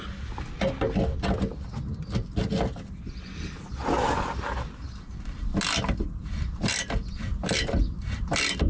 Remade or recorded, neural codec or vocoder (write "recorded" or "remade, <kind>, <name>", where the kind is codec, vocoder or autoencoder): recorded